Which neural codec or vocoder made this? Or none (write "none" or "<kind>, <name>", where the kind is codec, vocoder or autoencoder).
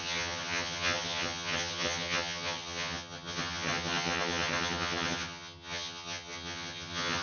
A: vocoder, HiFi-GAN